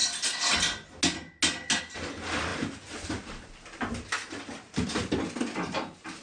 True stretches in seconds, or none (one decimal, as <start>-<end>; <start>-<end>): 0.0-2.5; 3.5-6.2